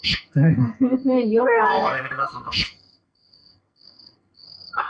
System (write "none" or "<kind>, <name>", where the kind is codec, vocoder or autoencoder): codec, SNAC